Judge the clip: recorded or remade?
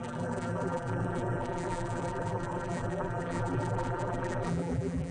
remade